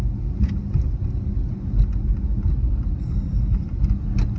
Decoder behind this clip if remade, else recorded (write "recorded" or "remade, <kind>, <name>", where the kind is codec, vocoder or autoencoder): recorded